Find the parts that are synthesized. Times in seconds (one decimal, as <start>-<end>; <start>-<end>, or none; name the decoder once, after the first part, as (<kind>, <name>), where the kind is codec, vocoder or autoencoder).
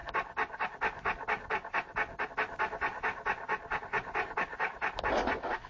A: none